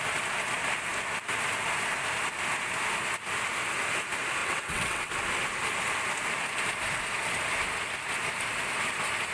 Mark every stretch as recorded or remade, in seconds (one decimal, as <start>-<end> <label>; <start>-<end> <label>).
0.0-4.4 recorded; 4.4-5.1 remade; 5.1-9.3 recorded